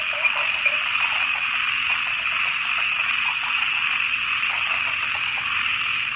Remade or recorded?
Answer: recorded